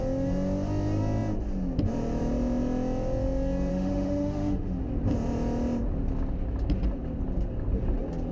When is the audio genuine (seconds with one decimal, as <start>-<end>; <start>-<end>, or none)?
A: 0.0-3.7; 4.8-8.3